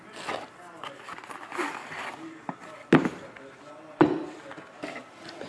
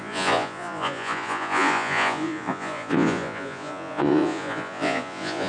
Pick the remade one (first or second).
second